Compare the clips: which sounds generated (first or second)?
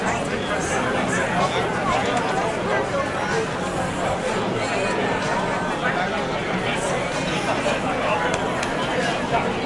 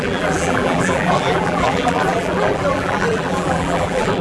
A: second